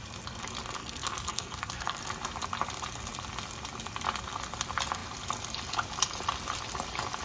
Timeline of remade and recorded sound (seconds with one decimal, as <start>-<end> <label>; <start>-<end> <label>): 0.0-0.8 recorded; 0.8-2.0 remade; 2.0-7.2 recorded